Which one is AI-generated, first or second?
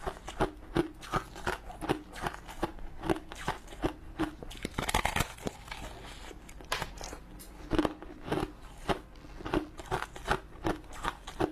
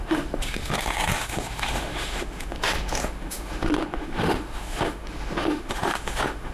second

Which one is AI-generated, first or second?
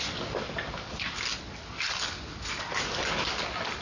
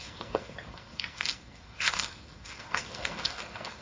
second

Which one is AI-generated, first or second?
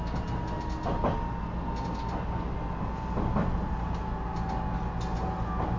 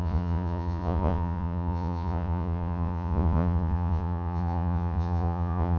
second